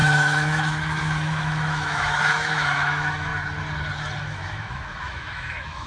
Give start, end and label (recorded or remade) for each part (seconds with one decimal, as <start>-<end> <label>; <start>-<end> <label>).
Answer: 0.0-3.3 remade; 3.3-4.2 recorded; 4.2-5.9 remade